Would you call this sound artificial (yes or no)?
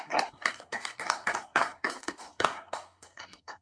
yes